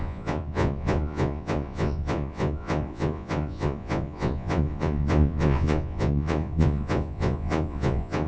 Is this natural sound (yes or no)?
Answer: no